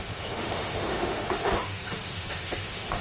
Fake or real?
fake